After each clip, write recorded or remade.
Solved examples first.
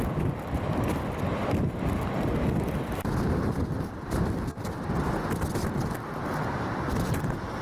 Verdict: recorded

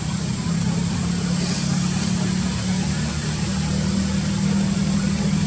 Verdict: recorded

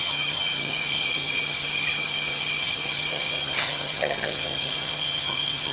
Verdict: remade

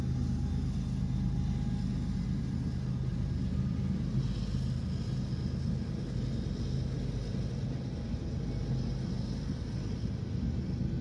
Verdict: recorded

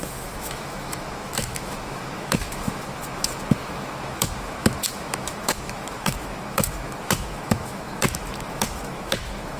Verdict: remade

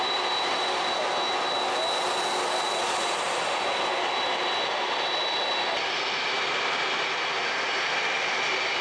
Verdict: recorded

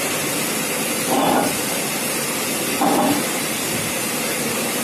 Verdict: recorded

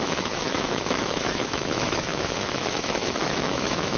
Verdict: remade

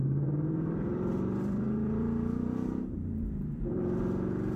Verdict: remade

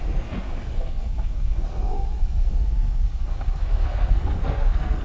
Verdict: remade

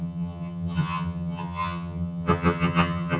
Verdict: remade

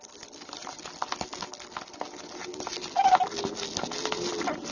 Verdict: recorded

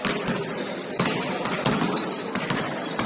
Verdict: recorded